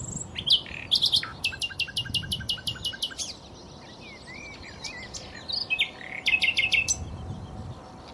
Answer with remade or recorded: recorded